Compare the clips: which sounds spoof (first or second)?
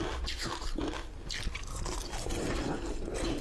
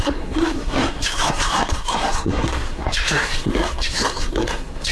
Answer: second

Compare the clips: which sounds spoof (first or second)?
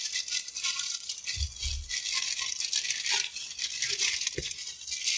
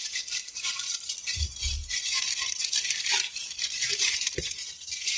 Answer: second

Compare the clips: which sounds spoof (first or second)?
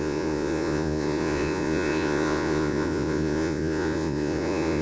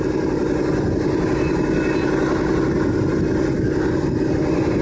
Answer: first